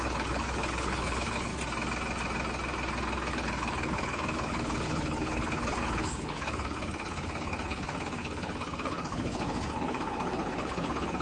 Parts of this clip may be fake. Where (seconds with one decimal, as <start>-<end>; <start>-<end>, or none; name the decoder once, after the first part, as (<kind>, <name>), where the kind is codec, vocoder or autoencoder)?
0.0-1.5 (codec, HILCodec); 3.3-11.2